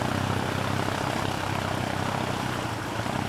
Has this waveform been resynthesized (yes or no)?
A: no